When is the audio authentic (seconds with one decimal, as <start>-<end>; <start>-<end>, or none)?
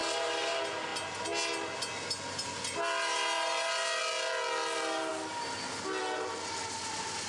0.0-7.3